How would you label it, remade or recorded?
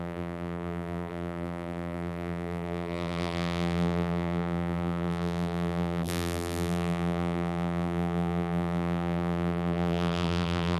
remade